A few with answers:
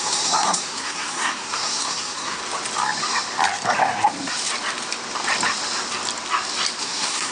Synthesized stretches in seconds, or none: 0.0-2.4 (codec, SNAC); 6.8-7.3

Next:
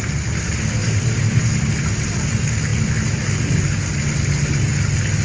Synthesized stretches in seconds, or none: 0.8-1.7 (vocoder, BigVGAN v2)

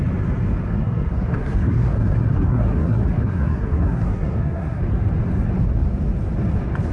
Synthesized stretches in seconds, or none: 0.7-4.8 (codec, SNAC)

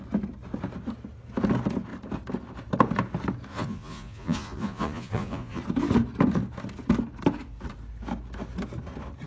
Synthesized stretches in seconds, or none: 3.5-5.6 (vocoder, Vocos)

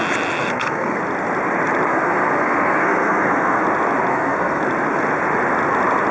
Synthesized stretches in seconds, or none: 0.4-1.0 (codec, SNAC); 1.9-3.6; 4.1-4.6

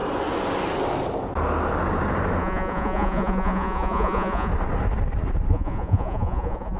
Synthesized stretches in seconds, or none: 2.4-4.5 (vocoder, Vocos); 5.5-6.8

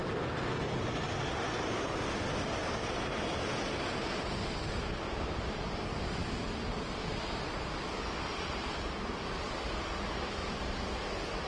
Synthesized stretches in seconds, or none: 10.4-11.0 (vocoder, BigVGAN v2)